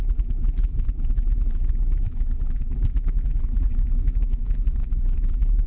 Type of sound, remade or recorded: remade